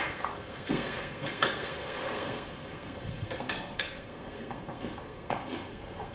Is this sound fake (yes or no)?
yes